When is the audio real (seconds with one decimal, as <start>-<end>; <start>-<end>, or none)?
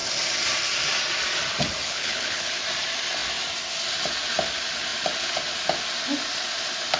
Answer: 0.0-1.8; 2.5-7.0